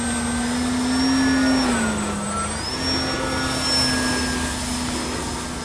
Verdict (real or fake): real